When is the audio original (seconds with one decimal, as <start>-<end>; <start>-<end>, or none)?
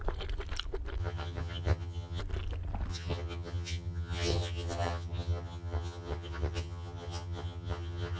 0.0-1.0; 2.2-2.9